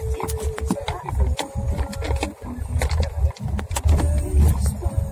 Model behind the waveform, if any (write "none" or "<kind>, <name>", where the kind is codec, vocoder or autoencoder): none